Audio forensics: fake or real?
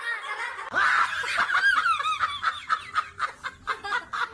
real